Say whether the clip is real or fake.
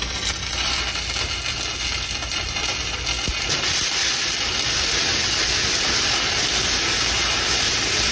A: real